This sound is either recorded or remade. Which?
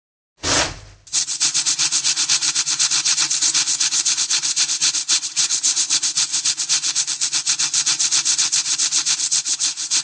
recorded